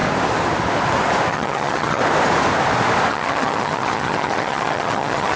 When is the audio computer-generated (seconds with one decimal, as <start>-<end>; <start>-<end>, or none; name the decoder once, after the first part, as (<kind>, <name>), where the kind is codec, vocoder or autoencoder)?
1.3-2.0 (vocoder, HiFi-GAN); 3.1-5.4